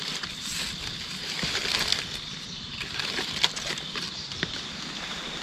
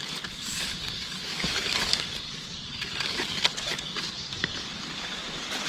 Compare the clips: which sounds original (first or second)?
first